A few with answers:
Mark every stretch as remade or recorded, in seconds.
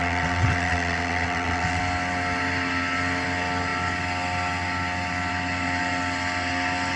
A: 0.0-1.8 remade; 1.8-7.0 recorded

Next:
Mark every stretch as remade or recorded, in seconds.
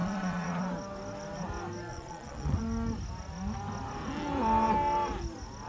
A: 0.0-0.6 remade; 0.6-1.9 recorded; 1.9-2.6 remade; 2.6-5.7 recorded